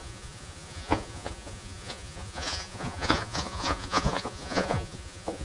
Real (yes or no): no